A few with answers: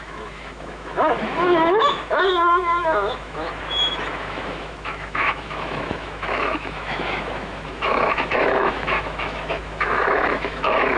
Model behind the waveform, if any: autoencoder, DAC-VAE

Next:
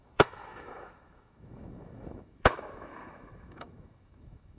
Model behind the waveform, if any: autoencoder, DAC-VAE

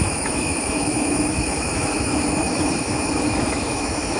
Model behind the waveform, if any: autoencoder, DAC-VAE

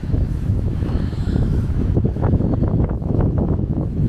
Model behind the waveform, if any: autoencoder, DAC-VAE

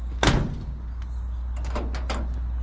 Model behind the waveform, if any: none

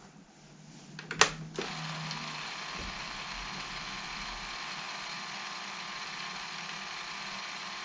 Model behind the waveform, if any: none